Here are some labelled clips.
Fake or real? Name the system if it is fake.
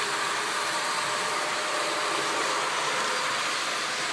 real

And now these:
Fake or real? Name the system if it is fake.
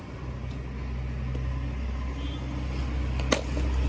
real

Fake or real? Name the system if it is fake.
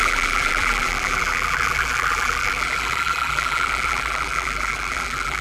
fake, vocoder, BigVGAN v2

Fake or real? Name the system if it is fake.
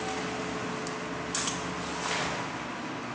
real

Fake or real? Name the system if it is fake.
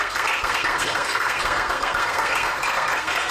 fake, codec, SNAC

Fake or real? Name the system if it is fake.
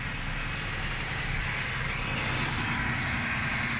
real